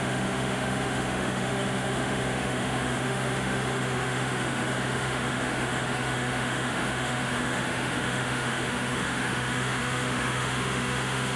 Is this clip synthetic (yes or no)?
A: yes